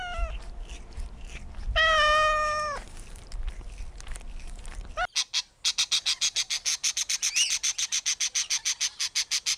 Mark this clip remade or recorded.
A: recorded